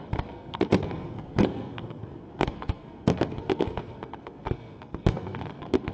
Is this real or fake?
fake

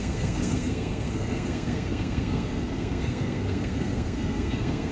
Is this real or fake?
fake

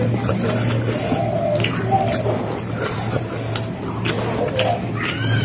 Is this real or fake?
real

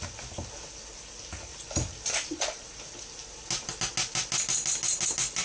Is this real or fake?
real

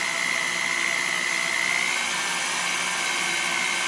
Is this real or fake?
real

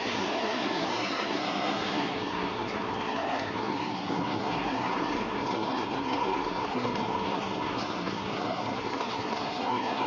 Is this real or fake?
fake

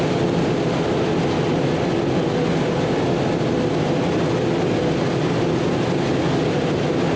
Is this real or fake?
real